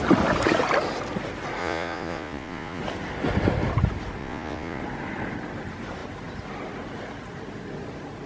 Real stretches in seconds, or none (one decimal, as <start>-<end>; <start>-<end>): 0.0-1.6; 2.8-4.2; 4.8-8.3